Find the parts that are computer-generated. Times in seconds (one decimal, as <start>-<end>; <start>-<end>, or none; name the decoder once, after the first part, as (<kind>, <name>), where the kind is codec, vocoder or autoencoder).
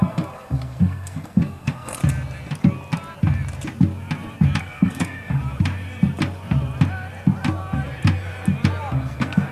0.0-2.0 (codec, SNAC); 4.6-5.4; 8.9-9.5